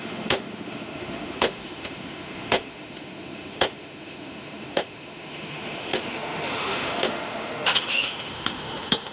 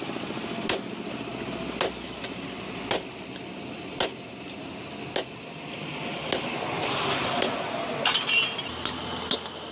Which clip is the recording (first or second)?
second